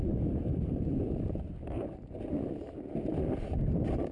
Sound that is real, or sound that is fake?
fake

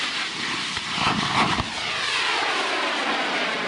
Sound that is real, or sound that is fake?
fake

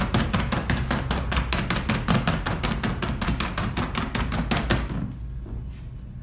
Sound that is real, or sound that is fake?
real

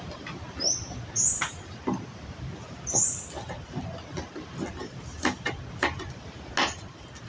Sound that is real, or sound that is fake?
real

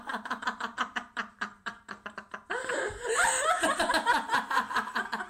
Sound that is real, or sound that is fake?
fake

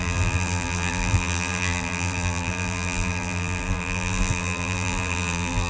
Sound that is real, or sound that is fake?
fake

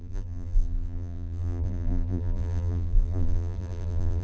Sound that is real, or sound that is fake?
fake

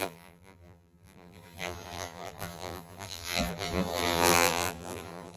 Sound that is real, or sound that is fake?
fake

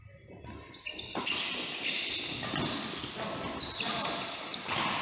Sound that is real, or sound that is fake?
real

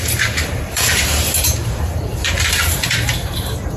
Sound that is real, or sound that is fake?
fake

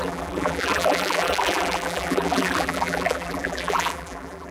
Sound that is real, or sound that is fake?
fake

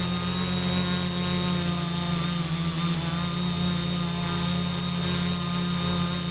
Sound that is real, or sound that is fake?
real